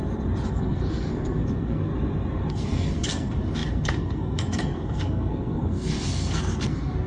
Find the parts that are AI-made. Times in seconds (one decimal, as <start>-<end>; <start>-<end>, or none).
0.5-1.9; 2.5-7.1